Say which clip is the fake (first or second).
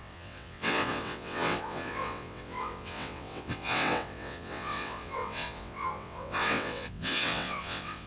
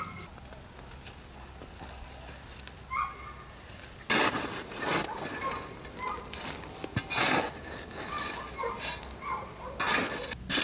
first